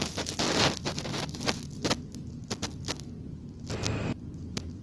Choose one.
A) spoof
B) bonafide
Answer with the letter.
B